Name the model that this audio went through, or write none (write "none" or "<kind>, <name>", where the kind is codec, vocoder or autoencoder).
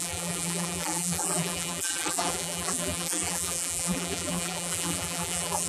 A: vocoder, BigVGAN v2